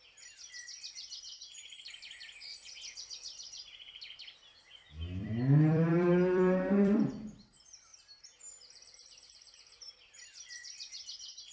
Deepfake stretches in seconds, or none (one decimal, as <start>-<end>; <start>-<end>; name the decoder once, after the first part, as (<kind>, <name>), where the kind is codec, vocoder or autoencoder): 0.0-4.5 (vocoder, BigVGAN v2); 5.2-7.9; 8.6-11.5